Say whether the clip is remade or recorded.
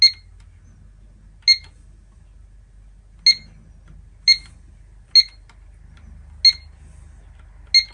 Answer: recorded